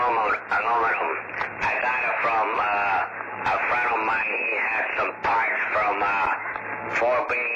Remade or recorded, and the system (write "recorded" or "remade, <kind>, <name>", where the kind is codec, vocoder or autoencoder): recorded